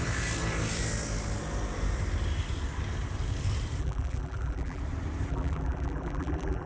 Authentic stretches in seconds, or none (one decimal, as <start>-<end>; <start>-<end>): 0.0-3.8; 4.8-5.3